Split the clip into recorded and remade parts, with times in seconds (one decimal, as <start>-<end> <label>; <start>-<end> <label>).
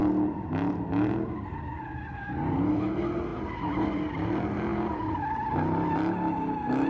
0.0-1.1 remade; 1.1-4.7 recorded; 4.7-5.4 remade; 5.4-6.9 recorded